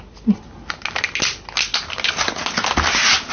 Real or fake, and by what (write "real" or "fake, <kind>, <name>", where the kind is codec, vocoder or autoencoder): real